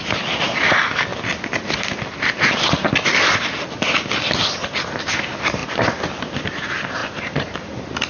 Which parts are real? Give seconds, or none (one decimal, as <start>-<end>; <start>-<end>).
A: 0.0-8.1